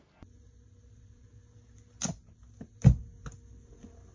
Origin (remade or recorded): recorded